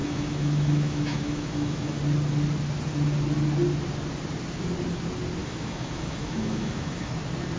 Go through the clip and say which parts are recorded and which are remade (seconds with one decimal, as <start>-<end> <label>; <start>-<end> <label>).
0.0-2.0 remade; 2.0-5.4 recorded; 5.4-7.1 remade; 7.1-7.6 recorded